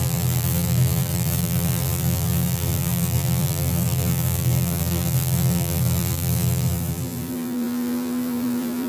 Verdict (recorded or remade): remade